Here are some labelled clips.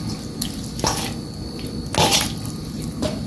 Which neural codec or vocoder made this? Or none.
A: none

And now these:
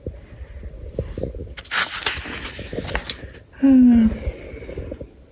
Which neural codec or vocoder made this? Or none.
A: none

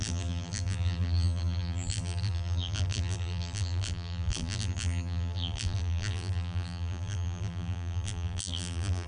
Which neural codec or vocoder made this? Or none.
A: vocoder, BigVGAN v2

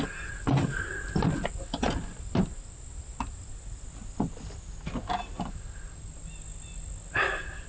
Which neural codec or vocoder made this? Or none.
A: none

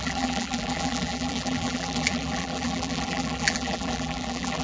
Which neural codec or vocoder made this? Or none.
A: vocoder, BigVGAN v2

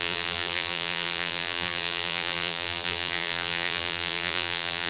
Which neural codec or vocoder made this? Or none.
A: vocoder, BigVGAN v2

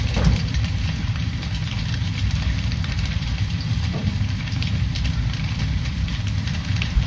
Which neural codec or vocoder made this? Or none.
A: vocoder, BigVGAN v2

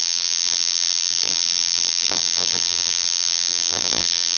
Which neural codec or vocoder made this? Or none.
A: vocoder, BigVGAN v2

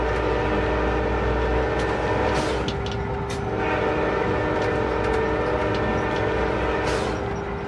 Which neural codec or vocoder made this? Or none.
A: none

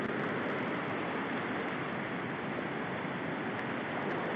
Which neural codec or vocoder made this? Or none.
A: none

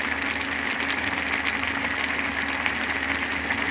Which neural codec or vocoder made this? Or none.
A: none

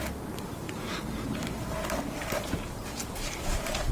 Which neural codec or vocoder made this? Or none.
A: vocoder, BigVGAN v2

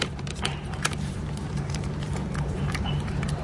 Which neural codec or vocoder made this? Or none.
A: vocoder, BigVGAN v2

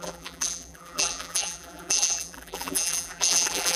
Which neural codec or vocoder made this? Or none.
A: vocoder, BigVGAN v2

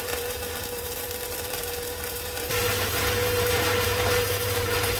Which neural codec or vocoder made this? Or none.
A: vocoder, BigVGAN v2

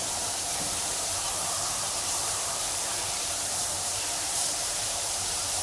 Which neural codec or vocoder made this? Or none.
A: vocoder, BigVGAN v2